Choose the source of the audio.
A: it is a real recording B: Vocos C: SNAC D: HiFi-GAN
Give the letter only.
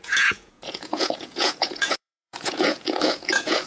B